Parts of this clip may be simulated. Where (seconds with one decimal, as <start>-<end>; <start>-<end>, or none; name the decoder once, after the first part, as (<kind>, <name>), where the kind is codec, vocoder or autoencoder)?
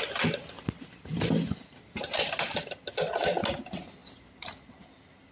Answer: none